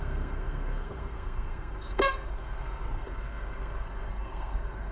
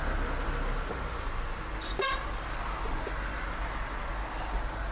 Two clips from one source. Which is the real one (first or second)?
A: second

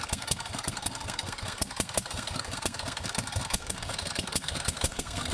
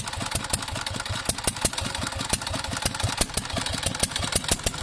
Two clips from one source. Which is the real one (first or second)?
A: second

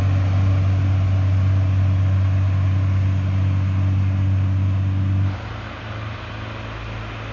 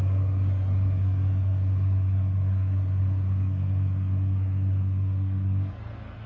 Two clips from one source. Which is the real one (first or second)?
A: first